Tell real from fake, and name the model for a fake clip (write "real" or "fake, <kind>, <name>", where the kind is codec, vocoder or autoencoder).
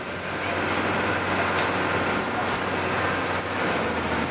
real